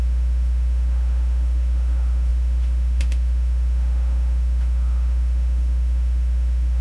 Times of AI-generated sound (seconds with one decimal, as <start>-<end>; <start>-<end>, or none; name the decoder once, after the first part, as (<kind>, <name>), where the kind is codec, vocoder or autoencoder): 0.0-6.8 (autoencoder, DAC-VAE)